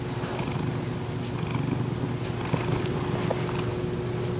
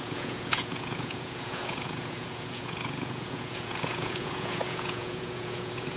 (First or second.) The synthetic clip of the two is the second